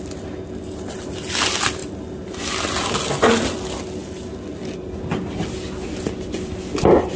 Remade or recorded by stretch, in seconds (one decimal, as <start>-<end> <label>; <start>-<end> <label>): 0.0-7.2 recorded